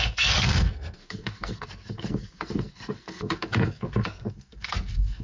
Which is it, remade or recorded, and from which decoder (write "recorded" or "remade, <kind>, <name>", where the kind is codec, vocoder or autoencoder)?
remade, codec, SNAC